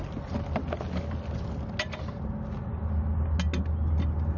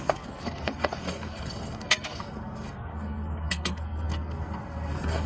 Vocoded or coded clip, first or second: second